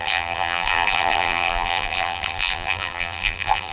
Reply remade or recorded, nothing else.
remade